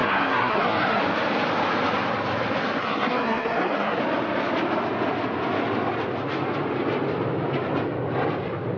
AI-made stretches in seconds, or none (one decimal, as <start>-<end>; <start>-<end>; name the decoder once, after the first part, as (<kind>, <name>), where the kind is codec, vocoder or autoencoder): 0.0-1.0 (codec, SNAC); 2.8-4.0